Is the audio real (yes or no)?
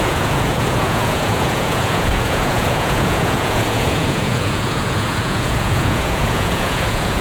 no